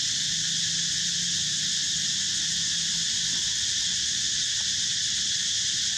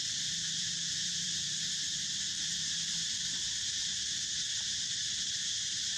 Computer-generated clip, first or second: second